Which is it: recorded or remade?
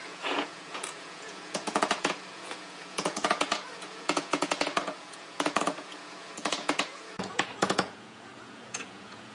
remade